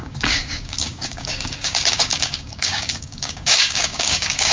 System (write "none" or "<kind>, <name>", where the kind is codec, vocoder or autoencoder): codec, DAC